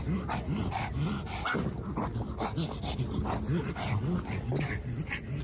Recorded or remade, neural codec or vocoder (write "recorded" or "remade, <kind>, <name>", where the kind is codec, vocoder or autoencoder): recorded